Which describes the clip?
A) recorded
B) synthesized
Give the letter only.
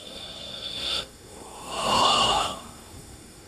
B